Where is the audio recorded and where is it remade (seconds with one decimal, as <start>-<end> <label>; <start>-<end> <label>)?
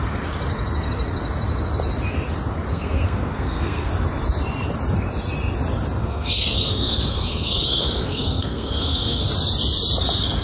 0.0-2.7 recorded; 2.7-3.9 remade; 3.9-6.0 recorded; 6.0-9.3 remade; 9.3-10.4 recorded